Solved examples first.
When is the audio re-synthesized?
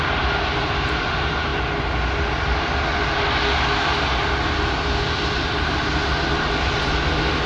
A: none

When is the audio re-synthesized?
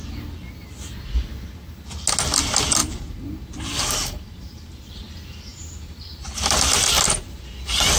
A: 2.8-4.9 (vocoder, BigVGAN v2); 5.5-6.2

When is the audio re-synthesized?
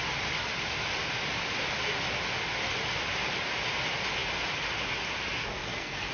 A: 5.4-6.1 (codec, SNAC)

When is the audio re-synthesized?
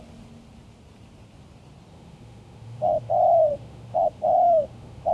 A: 1.9-3.1 (autoencoder, DAC-VAE); 3.5-5.1